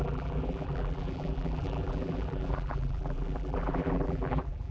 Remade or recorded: remade